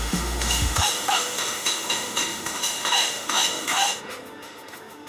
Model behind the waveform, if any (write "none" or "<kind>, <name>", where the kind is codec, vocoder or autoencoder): autoencoder, DAC-VAE